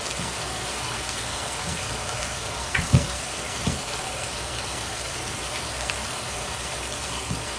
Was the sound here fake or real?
fake